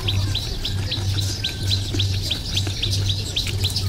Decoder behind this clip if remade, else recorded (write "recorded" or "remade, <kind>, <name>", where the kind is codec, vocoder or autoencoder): recorded